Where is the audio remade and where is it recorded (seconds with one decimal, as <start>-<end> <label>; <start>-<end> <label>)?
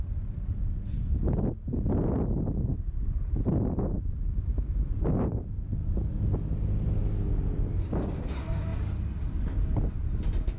0.0-10.6 recorded